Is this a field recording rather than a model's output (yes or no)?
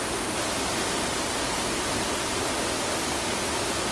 yes